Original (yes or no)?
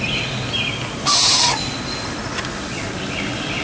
yes